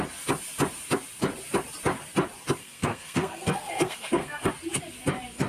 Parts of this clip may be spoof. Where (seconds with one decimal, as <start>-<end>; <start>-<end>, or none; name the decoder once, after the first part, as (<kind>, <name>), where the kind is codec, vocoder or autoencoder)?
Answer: 2.6-4.5 (codec, SNAC)